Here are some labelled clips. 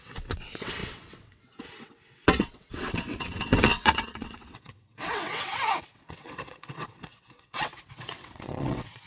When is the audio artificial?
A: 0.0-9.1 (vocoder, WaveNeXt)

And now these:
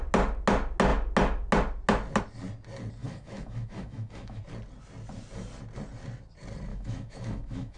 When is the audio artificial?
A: 3.0-4.4 (autoencoder, DAC-VAE); 6.7-7.8

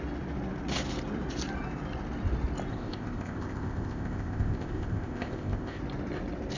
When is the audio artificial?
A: 2.7-5.8 (codec, ZipCodec)

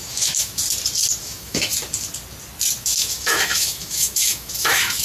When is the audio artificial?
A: 0.0-0.6 (autoencoder, DAC-VAE); 1.2-1.7; 2.8-5.0

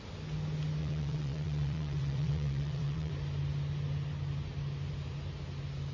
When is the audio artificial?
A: 0.8-3.1 (vocoder, WaveNeXt)